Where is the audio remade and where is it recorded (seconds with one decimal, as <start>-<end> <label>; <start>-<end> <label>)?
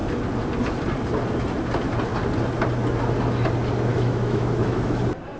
0.0-3.9 recorded; 3.9-5.0 remade; 5.0-5.4 recorded